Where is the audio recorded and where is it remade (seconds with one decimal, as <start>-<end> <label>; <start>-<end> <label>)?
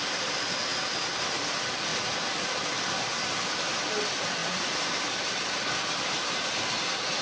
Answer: 0.0-4.4 recorded; 4.4-6.5 remade; 6.5-7.2 recorded